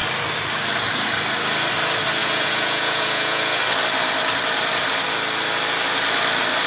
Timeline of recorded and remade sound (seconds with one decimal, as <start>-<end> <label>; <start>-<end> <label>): 0.0-2.2 recorded; 2.2-3.6 remade; 3.6-6.7 recorded